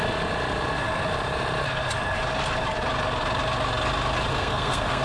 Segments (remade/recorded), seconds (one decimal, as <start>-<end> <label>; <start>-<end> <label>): 0.0-4.3 recorded; 4.3-5.0 remade